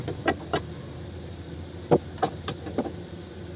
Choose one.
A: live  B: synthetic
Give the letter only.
A